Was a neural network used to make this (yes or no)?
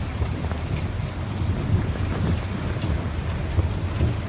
no